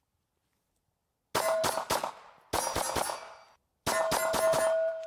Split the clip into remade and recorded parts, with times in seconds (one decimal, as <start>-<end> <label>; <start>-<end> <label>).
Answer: 0.0-5.1 recorded

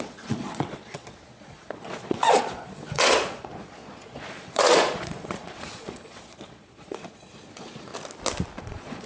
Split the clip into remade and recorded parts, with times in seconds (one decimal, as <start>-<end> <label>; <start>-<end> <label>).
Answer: 0.0-7.9 remade; 7.9-8.6 recorded; 8.6-9.1 remade

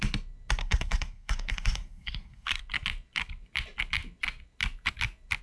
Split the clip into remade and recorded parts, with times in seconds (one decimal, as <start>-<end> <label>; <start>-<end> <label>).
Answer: 0.0-0.6 recorded; 0.6-2.6 remade; 2.6-5.4 recorded

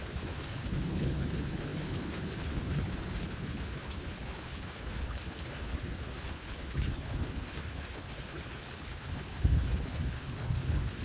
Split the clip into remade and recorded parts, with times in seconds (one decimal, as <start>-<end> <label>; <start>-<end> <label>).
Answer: 0.0-11.0 remade

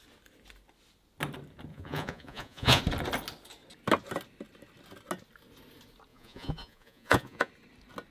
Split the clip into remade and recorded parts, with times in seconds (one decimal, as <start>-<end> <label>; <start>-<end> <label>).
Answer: 0.0-1.7 recorded; 1.7-2.8 remade; 2.8-6.1 recorded; 6.1-7.5 remade; 7.5-8.1 recorded

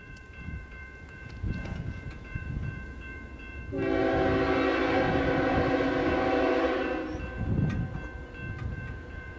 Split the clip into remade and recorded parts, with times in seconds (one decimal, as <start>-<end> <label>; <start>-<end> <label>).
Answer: 0.0-3.6 remade; 3.6-8.6 recorded; 8.6-9.4 remade

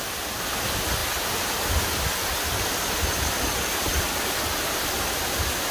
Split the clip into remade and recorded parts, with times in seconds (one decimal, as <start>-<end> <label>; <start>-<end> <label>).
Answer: 0.0-5.7 recorded

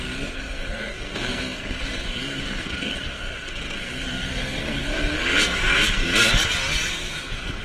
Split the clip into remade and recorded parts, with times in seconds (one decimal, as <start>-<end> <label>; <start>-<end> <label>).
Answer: 0.0-6.1 remade; 6.1-6.9 recorded; 6.9-7.6 remade